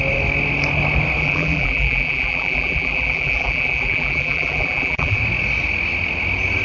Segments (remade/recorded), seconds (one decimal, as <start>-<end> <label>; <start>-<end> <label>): 0.0-1.2 recorded; 1.2-5.2 remade; 5.2-6.6 recorded